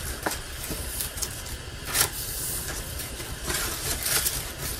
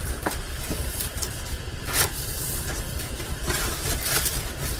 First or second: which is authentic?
first